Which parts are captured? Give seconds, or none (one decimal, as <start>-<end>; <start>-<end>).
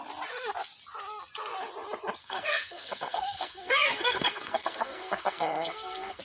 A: 0.0-2.2